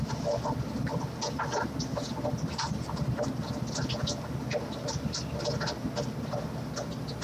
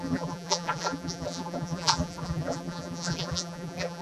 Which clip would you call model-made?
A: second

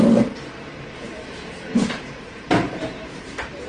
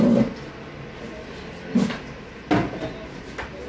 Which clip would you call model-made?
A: first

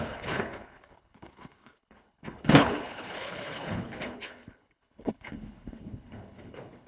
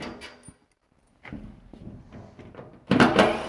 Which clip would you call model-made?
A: first